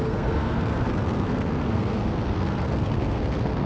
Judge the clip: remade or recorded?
remade